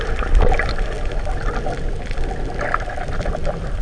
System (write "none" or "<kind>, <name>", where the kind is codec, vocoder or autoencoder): none